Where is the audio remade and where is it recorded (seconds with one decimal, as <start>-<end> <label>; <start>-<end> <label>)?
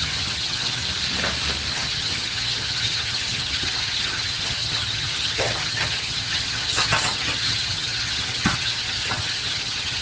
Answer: 0.0-0.8 remade; 0.8-1.7 recorded; 1.7-10.0 remade